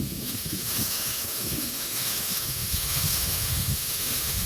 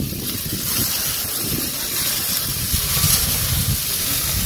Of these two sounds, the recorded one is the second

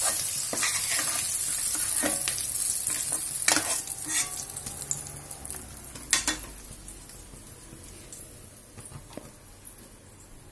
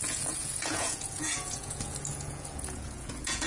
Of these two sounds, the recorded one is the first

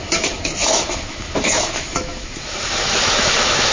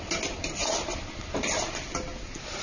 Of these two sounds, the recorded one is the second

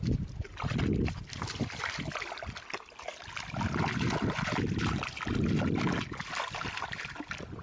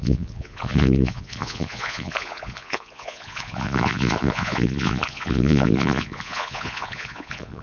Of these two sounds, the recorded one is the first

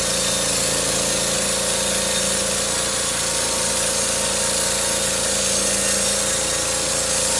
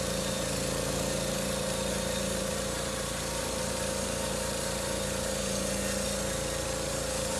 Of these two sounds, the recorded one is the first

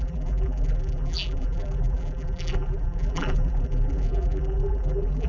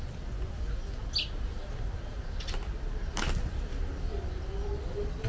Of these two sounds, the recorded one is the second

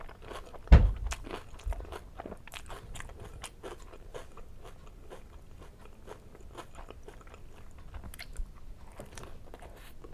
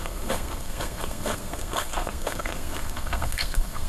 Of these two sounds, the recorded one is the first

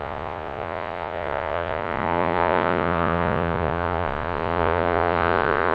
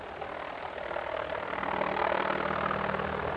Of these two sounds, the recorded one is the second